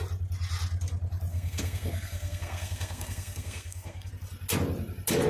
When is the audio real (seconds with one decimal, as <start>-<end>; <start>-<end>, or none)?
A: 0.0-1.3; 4.1-5.3